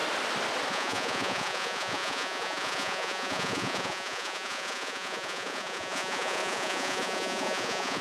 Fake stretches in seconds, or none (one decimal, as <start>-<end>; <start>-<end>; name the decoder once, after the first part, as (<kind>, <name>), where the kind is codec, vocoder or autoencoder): 0.7-8.0 (vocoder, Vocos)